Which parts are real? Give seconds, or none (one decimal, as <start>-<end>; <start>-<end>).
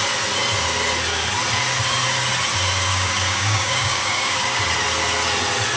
0.0-2.9; 4.6-5.8